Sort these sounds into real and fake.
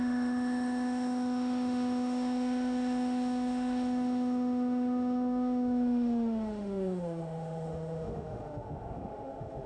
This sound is fake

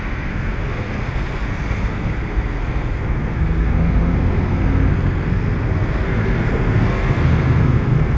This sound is fake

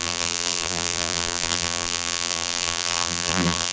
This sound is fake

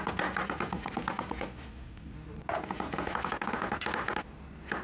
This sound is real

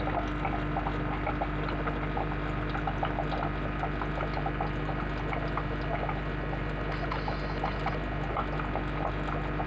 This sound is real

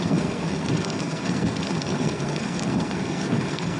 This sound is fake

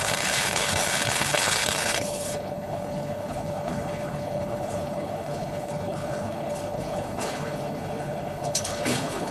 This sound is fake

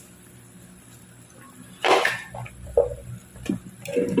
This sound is real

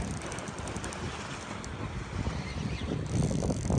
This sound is real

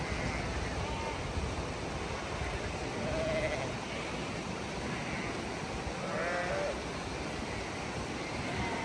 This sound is real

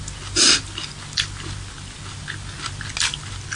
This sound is real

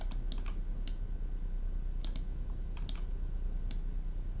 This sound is real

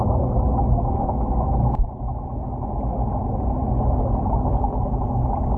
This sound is real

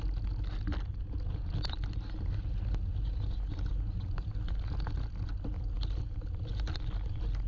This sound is real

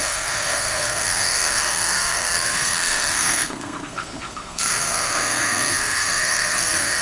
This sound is fake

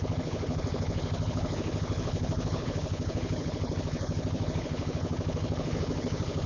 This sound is fake